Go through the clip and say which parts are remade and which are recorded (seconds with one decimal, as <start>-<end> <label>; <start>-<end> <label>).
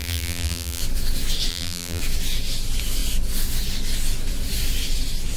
0.0-0.8 remade; 0.8-1.5 recorded; 1.5-2.0 remade; 2.0-5.4 recorded